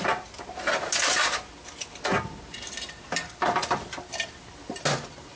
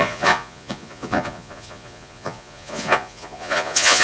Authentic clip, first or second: first